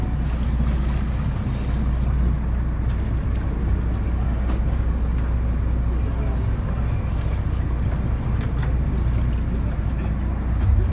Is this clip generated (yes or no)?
no